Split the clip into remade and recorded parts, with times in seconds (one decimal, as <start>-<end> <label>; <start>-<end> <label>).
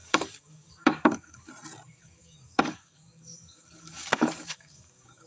0.0-1.5 remade; 1.5-2.0 recorded; 2.0-5.3 remade